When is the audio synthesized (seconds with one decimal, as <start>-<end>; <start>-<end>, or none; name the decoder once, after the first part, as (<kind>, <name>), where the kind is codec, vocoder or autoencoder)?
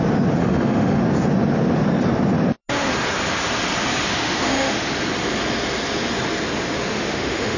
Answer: 0.4-1.0 (autoencoder, DAC-VAE); 4.1-4.9; 6.9-7.6